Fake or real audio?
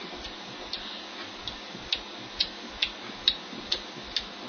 real